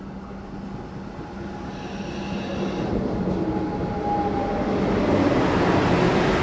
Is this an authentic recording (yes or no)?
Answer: yes